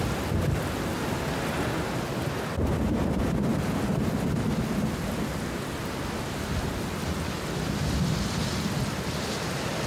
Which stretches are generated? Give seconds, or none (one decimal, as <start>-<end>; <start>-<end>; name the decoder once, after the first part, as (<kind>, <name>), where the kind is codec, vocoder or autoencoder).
none